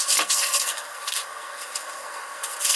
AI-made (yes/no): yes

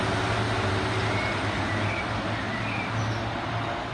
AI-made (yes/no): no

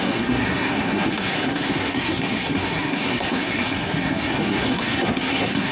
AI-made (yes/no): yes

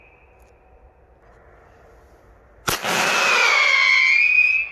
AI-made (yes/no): no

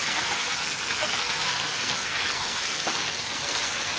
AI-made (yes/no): yes